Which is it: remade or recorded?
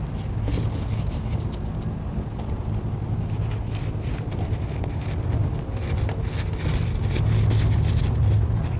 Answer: recorded